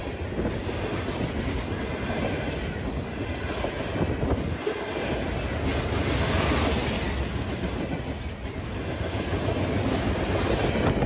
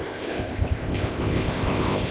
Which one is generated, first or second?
second